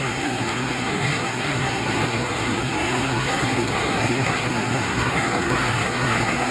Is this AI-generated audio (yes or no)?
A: yes